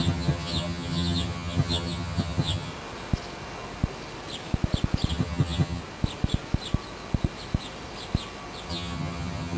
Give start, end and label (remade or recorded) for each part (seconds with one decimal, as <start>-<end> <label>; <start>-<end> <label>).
0.0-2.7 remade; 2.7-5.1 recorded; 5.1-5.8 remade; 5.8-8.7 recorded; 8.7-9.6 remade